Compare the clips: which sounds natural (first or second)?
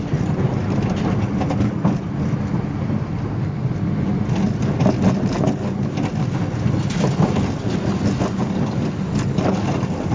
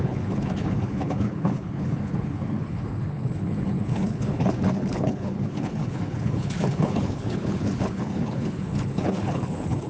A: first